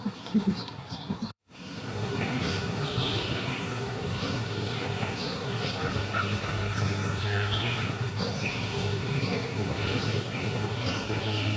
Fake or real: fake